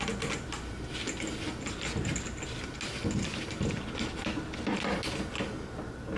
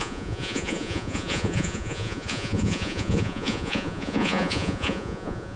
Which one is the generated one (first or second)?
second